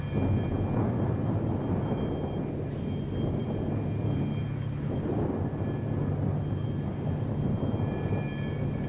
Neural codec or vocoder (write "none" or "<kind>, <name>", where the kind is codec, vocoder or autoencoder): none